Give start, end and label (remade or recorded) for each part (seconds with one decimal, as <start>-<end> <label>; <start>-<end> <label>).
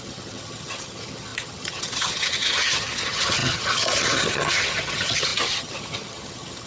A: 0.0-6.7 remade